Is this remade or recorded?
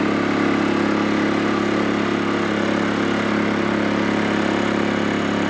recorded